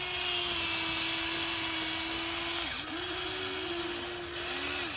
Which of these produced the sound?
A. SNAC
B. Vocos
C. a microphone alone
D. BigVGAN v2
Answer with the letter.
C